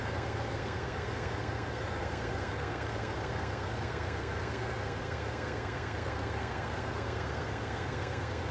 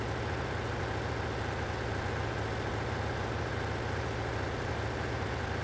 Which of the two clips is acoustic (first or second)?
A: second